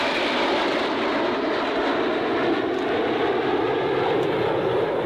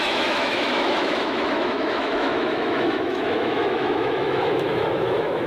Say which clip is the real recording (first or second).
first